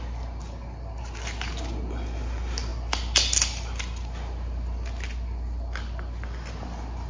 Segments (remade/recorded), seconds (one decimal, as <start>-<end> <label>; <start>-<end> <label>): 0.0-7.1 recorded